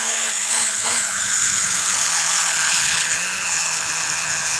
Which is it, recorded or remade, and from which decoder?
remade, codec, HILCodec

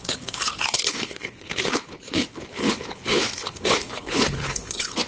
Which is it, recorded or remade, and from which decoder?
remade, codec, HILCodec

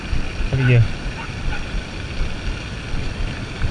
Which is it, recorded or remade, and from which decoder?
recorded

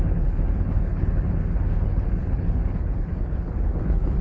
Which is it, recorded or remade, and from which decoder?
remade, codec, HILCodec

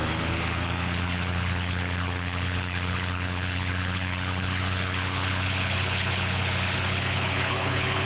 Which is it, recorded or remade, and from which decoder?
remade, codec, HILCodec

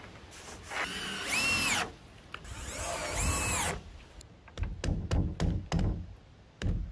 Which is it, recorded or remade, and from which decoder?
recorded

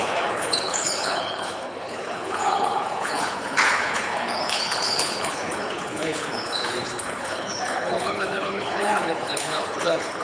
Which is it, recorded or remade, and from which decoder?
remade, codec, HILCodec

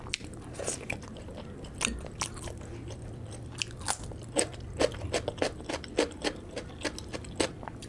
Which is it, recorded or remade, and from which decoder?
recorded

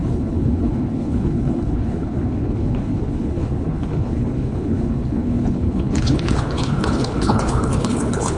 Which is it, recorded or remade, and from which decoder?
remade, codec, HILCodec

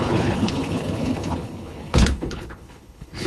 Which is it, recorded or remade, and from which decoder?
remade, codec, HILCodec